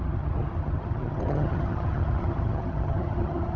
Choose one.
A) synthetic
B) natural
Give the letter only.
A